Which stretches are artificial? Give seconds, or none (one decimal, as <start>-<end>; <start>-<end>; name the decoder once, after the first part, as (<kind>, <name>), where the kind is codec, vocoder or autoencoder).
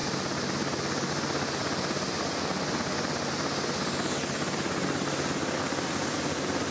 none